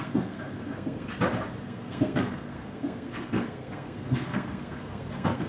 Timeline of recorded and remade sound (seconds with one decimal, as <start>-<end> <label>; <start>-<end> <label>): 0.0-1.1 remade; 1.1-1.6 recorded; 1.6-5.5 remade